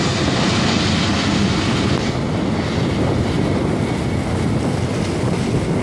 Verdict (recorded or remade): recorded